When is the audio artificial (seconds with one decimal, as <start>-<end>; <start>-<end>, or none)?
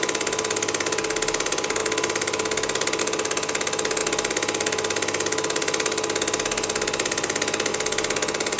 none